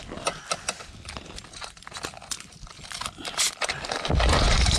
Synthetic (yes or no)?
no